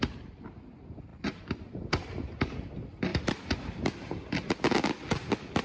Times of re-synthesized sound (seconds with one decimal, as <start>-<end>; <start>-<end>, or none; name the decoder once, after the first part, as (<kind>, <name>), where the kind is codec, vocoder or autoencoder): none

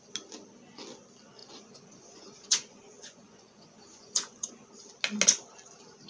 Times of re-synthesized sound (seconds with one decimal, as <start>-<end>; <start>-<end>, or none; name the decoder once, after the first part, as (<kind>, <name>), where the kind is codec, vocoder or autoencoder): 1.4-4.7 (vocoder, Vocos)

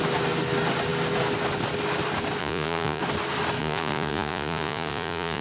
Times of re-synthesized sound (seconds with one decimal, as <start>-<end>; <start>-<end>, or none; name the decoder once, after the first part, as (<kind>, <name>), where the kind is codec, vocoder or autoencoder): 2.4-3.0 (vocoder, Vocos); 3.6-5.4